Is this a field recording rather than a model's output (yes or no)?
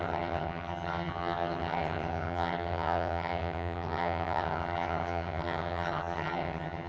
no